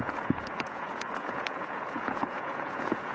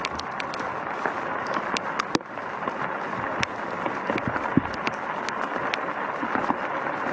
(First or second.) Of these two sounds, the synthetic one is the first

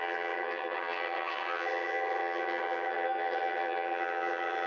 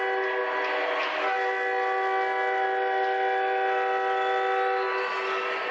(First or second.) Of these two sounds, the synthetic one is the first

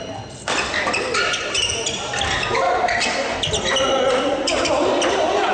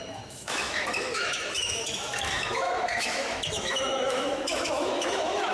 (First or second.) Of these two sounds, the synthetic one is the second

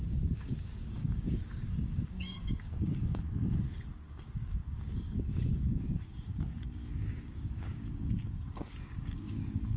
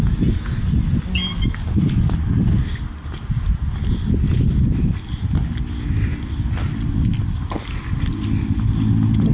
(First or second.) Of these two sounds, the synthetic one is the first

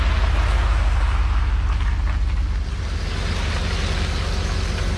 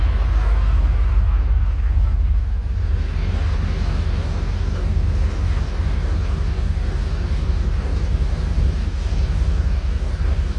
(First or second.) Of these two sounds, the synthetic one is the second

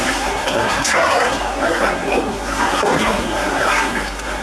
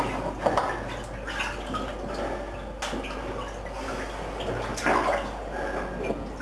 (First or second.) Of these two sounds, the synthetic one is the first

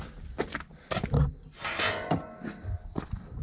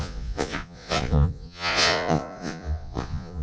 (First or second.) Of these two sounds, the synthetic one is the second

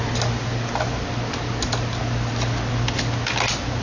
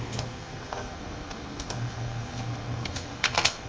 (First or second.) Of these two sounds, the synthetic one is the second